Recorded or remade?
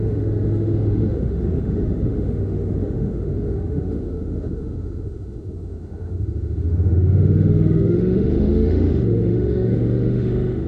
remade